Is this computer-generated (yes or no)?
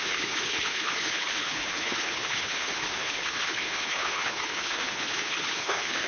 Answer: yes